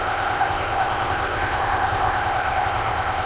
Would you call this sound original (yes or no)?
no